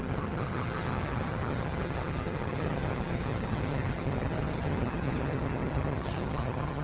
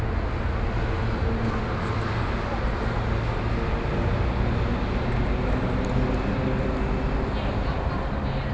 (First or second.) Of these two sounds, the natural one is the second